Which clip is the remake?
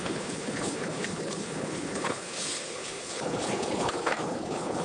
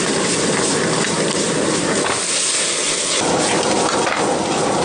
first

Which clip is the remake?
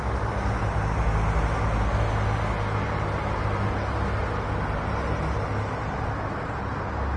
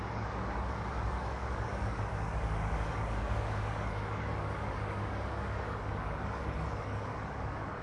second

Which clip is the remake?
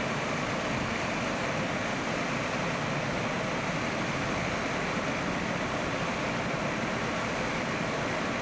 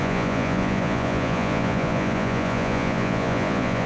second